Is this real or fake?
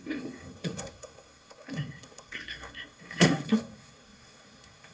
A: fake